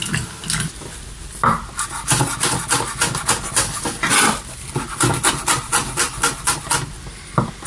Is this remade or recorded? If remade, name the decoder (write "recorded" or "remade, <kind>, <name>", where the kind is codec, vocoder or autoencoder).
recorded